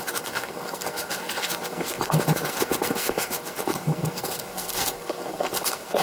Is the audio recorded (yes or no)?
no